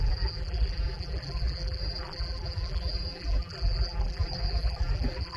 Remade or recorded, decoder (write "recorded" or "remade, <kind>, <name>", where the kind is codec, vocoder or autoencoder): remade, vocoder, BigVGAN v2